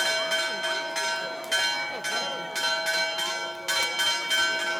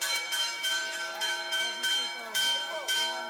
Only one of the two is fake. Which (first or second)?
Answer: second